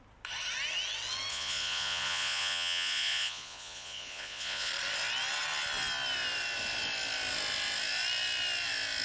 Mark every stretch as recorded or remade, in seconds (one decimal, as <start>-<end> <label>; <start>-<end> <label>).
0.0-1.3 recorded; 1.3-4.7 remade; 4.7-9.0 recorded